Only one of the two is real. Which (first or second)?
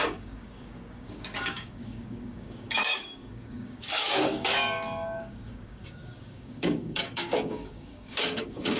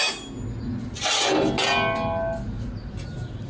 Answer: second